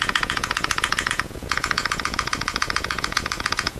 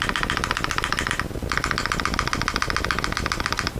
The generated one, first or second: first